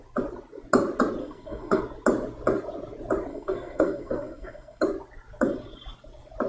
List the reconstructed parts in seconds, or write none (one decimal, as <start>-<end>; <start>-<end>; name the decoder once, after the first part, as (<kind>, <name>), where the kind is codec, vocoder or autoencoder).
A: 1.2-1.8 (codec, SNAC); 3.3-4.8